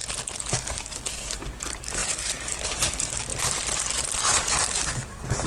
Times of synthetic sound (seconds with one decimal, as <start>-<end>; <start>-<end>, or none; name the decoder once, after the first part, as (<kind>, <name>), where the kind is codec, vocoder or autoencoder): 0.5-3.3 (codec, DAC); 4.2-5.5